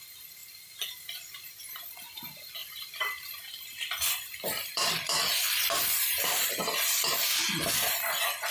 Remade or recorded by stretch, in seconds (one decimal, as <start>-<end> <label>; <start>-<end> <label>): 0.0-0.4 recorded; 0.4-1.5 remade; 1.5-2.6 recorded; 2.6-7.1 remade; 7.1-8.5 recorded